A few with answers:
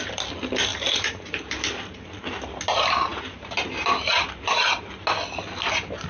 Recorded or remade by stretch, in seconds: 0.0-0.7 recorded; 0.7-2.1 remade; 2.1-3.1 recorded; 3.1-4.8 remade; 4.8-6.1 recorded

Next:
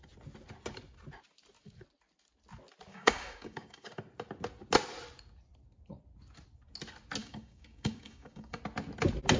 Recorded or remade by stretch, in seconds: 0.0-2.9 recorded; 2.9-3.9 remade; 3.9-7.2 recorded; 7.2-8.6 remade; 8.6-9.4 recorded

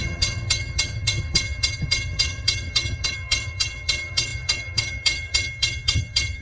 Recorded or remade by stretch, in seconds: 0.0-6.4 remade

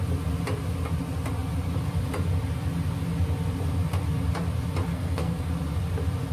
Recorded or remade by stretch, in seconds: 0.0-4.9 recorded; 4.9-5.5 remade; 5.5-6.3 recorded

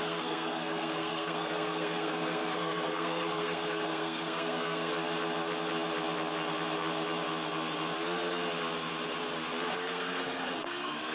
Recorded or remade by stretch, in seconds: 0.0-4.9 remade; 4.9-9.7 recorded; 9.7-11.1 remade

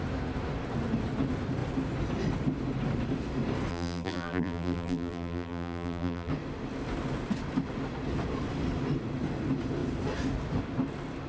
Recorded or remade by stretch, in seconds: 0.0-3.7 recorded; 3.7-6.3 remade; 6.3-11.3 recorded